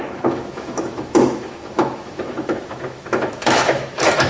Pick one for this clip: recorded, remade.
remade